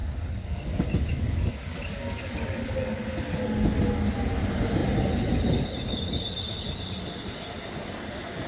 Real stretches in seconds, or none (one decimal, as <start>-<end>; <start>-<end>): 3.0-8.5